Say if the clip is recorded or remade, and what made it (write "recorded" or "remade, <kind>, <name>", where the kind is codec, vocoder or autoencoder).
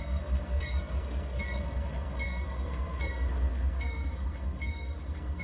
remade, codec, SNAC